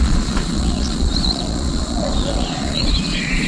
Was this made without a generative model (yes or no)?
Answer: no